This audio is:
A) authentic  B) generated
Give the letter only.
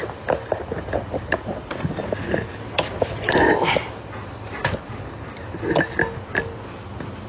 A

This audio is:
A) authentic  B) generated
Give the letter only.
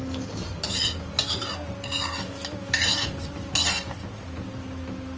A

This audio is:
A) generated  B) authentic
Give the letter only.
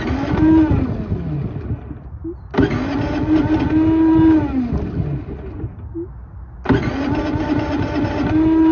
B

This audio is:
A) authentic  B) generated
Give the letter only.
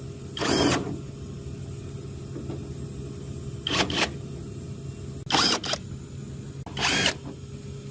A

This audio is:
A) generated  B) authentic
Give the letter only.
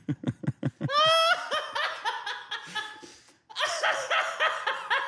B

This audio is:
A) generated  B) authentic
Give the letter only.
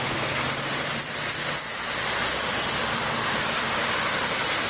B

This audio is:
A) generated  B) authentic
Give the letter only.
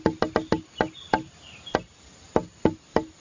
B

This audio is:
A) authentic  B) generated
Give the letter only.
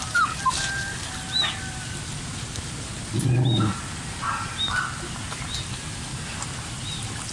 A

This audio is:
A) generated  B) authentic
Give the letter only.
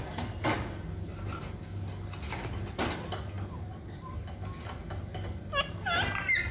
B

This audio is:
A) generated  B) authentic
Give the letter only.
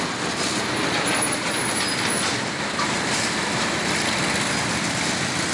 B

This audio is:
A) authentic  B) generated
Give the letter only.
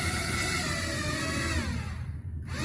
A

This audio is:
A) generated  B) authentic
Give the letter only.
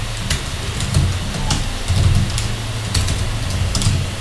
B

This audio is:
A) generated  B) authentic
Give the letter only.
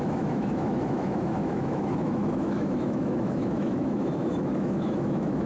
A